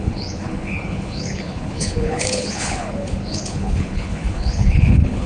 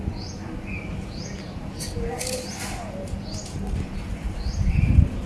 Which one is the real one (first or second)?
second